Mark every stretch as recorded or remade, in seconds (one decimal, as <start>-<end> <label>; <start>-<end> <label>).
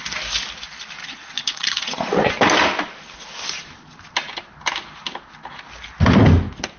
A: 0.0-1.0 recorded; 1.0-2.3 remade; 2.3-6.8 recorded